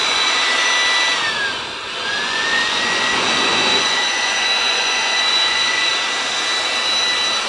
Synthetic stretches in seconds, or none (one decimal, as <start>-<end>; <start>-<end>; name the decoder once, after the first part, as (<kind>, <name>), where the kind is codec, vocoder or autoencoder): 0.0-0.7 (vocoder, Vocos); 2.0-5.9

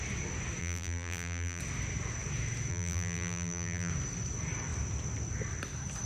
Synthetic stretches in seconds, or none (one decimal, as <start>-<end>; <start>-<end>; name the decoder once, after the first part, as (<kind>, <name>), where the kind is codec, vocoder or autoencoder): 0.6-1.6 (vocoder, BigVGAN v2); 2.7-3.9

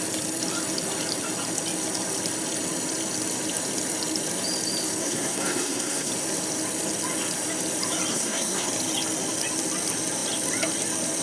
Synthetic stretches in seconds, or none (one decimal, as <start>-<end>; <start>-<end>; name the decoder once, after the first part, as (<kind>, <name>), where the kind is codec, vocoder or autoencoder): 5.0-6.1 (codec, SNAC); 8.1-8.7

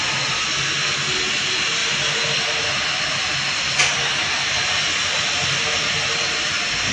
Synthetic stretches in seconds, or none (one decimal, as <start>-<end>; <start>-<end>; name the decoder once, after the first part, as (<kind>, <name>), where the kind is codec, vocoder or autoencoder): none

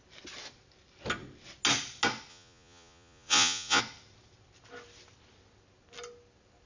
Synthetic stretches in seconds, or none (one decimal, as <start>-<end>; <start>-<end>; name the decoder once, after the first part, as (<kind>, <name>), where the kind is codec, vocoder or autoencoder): 2.3-3.8 (vocoder, Vocos)

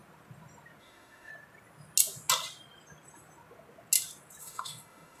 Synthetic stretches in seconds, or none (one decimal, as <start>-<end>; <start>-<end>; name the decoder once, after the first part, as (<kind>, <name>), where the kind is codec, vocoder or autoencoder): 0.8-1.3 (autoencoder, DAC-VAE); 4.4-5.2

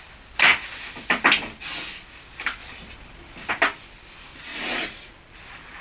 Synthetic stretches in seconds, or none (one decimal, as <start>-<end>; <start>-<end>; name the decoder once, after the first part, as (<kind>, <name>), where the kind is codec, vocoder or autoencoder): 4.5-5.1 (vocoder, Vocos)